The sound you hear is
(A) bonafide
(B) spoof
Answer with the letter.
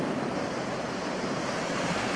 B